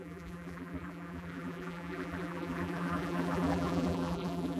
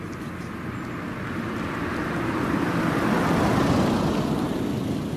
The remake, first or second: first